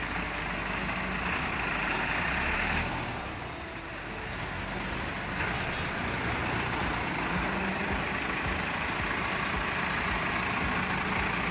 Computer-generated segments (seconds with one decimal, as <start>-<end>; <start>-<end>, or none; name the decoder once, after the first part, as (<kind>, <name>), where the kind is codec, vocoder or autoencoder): 6.4-10.3 (vocoder, BigVGAN v2)